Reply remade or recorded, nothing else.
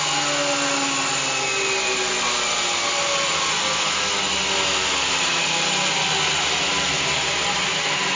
recorded